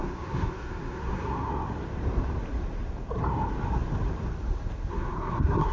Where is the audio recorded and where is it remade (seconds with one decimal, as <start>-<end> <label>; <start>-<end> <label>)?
0.0-1.5 remade; 1.5-4.9 recorded; 4.9-5.7 remade